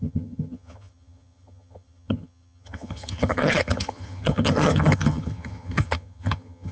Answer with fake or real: fake